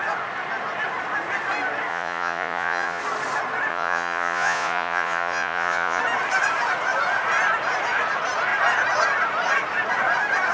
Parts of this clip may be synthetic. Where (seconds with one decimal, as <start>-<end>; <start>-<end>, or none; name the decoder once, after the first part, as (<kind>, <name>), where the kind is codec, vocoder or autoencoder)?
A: 1.9-3.0 (vocoder, Vocos); 3.7-6.0